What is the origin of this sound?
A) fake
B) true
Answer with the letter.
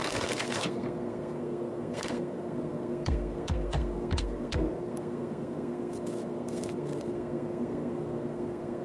A